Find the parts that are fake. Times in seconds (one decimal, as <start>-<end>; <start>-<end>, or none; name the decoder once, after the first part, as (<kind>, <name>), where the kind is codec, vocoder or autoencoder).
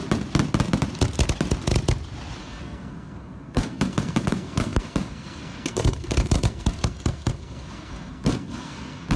2.4-9.2 (codec, SNAC)